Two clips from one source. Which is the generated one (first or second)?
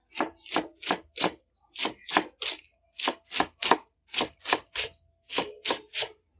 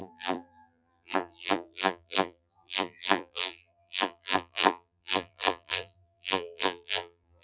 second